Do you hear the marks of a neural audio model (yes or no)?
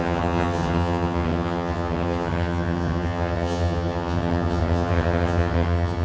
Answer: yes